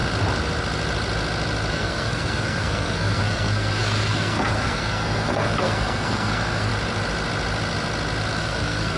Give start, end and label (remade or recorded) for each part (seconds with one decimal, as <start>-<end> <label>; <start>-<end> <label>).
0.0-1.7 recorded; 1.7-6.7 remade; 6.7-8.4 recorded; 8.4-9.0 remade